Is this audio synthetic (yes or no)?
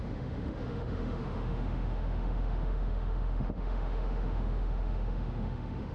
yes